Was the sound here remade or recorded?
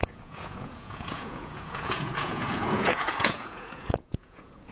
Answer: remade